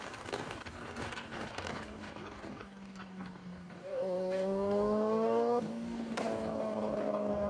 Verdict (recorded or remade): remade